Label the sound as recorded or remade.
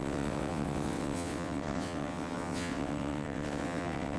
remade